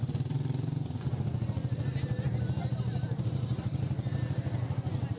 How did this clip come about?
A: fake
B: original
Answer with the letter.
B